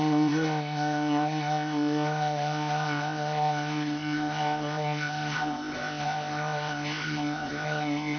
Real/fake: fake